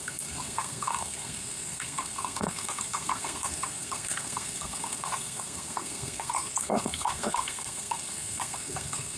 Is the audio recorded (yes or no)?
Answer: no